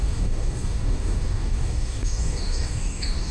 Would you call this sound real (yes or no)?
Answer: no